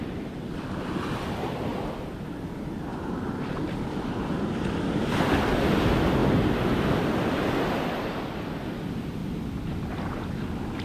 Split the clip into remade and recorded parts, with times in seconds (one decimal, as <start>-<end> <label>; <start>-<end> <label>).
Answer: 0.0-10.8 recorded